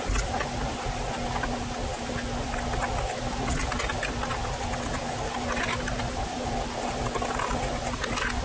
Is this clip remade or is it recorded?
recorded